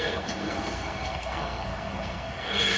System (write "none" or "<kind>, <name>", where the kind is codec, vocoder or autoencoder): codec, SNAC